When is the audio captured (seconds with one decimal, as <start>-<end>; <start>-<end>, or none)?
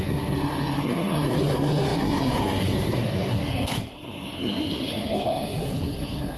none